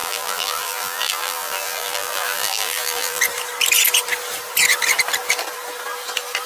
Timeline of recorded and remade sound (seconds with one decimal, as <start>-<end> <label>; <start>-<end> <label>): 0.0-3.2 remade; 3.2-6.5 recorded